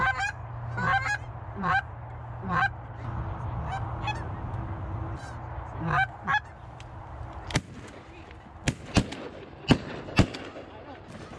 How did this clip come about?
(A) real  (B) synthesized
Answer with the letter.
A